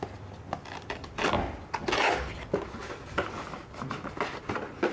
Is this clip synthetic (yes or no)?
no